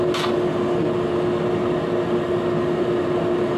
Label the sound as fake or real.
real